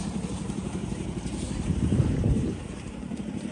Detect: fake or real fake